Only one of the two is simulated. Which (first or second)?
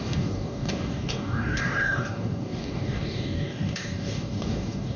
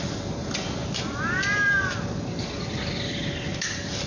first